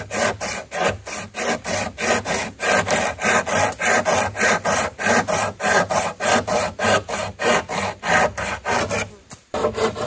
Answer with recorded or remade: recorded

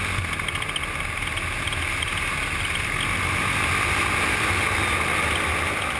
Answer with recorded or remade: recorded